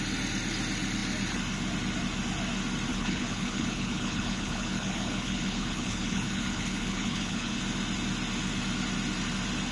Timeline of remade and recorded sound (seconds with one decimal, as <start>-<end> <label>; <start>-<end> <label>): 0.0-2.9 recorded; 2.9-7.6 remade; 7.6-9.7 recorded